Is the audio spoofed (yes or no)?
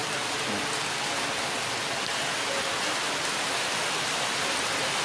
no